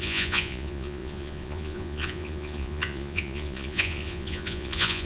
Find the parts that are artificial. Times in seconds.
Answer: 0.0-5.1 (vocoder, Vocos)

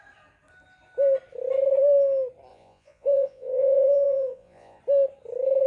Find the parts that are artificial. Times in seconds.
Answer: 2.5-4.8 (vocoder, Vocos)

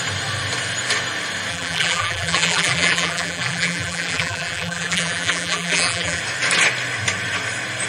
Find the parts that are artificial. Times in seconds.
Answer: 1.5-6.2 (vocoder, BigVGAN v2)

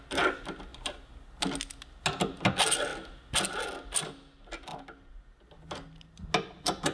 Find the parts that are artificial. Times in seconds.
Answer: none

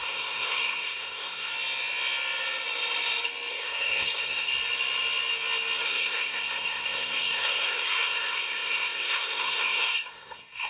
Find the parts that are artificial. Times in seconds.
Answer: 0.0-1.5 (codec, SNAC); 3.5-4.5; 5.8-10.7